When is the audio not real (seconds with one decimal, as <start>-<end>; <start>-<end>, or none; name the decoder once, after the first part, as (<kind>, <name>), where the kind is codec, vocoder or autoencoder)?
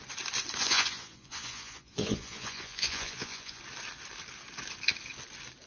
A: 0.6-3.6 (vocoder, Vocos)